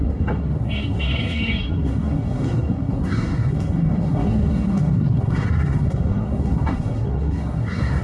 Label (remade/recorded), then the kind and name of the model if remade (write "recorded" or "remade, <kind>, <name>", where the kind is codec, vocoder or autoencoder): remade, codec, SNAC